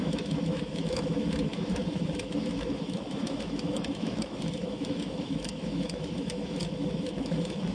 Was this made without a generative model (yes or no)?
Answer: no